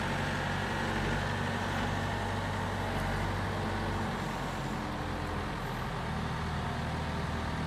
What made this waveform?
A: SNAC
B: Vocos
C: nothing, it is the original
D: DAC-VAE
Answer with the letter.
C